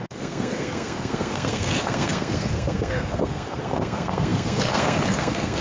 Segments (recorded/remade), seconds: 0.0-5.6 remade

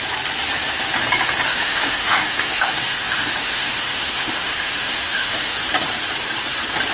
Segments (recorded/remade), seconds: 0.0-1.5 recorded; 1.5-5.6 remade; 5.6-6.9 recorded

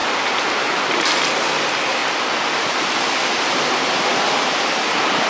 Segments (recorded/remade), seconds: 0.0-5.3 recorded

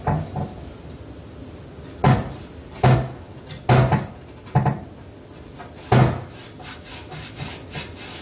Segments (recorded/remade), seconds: 0.0-8.2 recorded

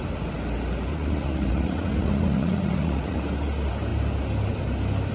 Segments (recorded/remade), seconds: 0.0-0.9 recorded; 0.9-3.2 remade; 3.2-5.1 recorded

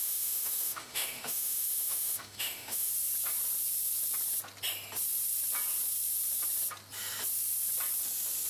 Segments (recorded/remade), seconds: 0.0-2.9 remade; 2.9-8.5 recorded

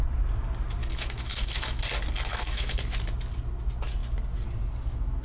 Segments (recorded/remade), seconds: 0.0-0.8 recorded; 0.8-1.8 remade; 1.8-2.3 recorded; 2.3-2.8 remade; 2.8-5.2 recorded